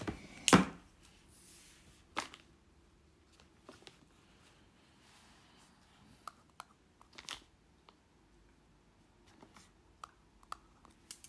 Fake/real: real